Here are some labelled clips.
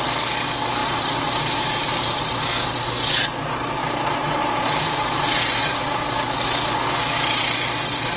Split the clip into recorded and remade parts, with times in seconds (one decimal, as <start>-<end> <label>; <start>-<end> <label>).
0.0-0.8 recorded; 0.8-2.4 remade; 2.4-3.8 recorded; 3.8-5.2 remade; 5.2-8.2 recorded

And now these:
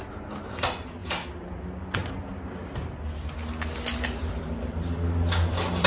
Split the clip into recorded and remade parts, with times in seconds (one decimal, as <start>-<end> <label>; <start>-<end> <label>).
0.0-1.0 recorded; 1.0-1.5 remade; 1.5-4.2 recorded; 4.2-5.9 remade

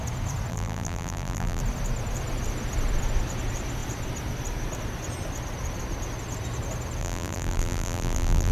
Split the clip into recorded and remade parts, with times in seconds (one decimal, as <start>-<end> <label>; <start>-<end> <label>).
0.0-0.5 recorded; 0.5-1.6 remade; 1.6-7.0 recorded; 7.0-8.5 remade

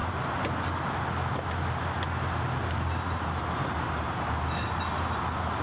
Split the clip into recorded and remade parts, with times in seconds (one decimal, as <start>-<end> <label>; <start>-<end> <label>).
0.0-5.6 recorded

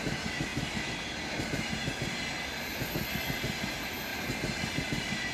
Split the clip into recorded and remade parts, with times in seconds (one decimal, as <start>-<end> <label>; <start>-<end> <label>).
0.0-4.1 recorded; 4.1-5.3 remade

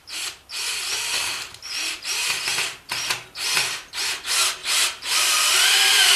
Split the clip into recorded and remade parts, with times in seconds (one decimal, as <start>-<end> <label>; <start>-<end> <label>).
0.0-4.6 recorded; 4.6-5.5 remade; 5.5-6.2 recorded